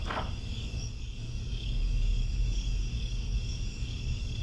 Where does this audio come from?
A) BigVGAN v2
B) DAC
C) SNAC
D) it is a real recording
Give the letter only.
B